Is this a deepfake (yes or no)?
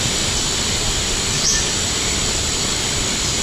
no